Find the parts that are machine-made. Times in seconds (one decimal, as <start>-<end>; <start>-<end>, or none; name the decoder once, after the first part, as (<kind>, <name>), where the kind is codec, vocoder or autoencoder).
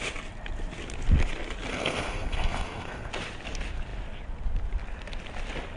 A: 1.7-3.1 (codec, SNAC)